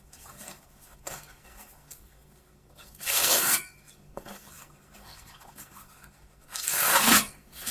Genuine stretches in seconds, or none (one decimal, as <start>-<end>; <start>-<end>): none